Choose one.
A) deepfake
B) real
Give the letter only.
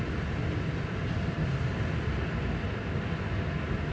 B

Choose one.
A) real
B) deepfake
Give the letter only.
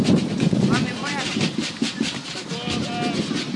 A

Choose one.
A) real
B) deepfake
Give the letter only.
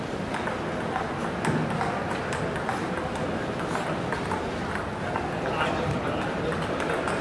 A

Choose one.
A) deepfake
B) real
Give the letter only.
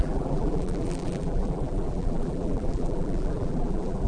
A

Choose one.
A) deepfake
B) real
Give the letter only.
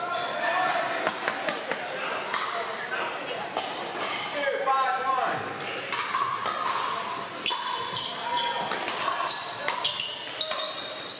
B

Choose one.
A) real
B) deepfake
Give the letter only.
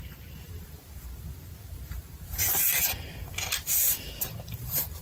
B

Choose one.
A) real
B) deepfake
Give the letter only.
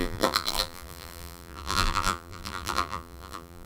B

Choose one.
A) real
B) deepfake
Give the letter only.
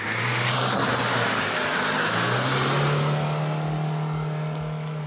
A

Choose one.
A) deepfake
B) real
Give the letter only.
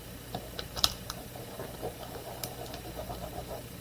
A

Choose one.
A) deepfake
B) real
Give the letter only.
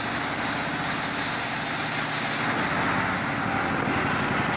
B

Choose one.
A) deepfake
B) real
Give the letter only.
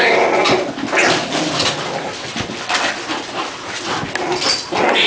B